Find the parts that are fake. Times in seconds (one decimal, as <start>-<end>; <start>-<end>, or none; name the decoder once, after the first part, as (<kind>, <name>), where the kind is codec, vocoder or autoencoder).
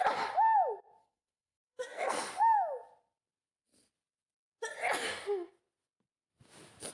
1.0-2.2 (codec, SNAC)